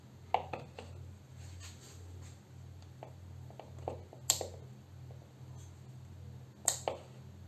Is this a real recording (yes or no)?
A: yes